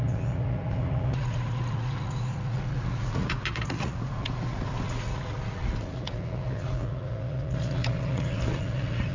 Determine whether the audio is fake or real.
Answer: fake